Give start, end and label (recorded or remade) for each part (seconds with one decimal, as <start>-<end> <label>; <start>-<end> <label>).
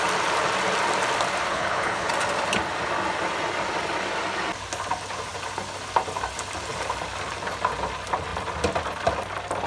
0.0-1.5 recorded; 1.5-2.1 remade; 2.1-9.7 recorded